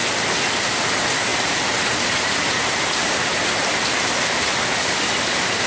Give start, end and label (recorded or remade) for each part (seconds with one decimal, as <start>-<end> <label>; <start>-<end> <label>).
0.0-1.3 recorded; 1.3-3.8 remade; 3.8-5.7 recorded